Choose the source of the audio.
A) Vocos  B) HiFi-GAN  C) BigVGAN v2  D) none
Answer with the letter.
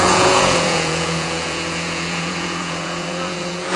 A